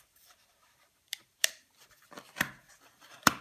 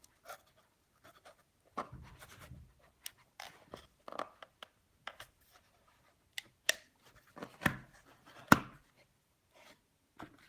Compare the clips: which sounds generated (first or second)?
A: first